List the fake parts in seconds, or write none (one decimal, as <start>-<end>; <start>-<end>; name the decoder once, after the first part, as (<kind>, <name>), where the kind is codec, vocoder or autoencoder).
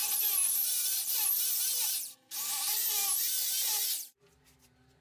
none